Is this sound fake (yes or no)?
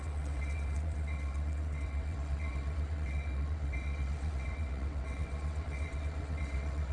yes